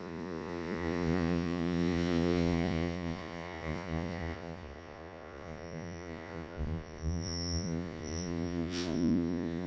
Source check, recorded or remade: remade